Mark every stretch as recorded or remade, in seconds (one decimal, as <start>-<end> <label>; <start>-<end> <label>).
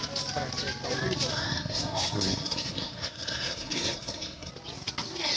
0.0-1.3 recorded; 1.3-4.5 remade; 4.5-5.4 recorded